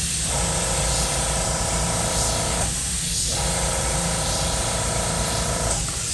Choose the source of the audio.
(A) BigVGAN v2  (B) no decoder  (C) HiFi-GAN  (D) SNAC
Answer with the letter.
B